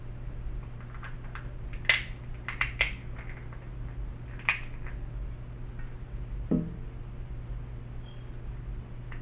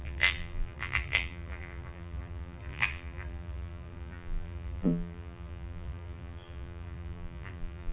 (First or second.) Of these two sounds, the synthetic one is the second